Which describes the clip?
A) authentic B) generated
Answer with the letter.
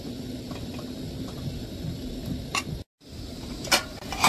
A